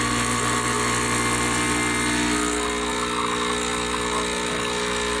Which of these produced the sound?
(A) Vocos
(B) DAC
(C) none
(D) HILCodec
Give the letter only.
C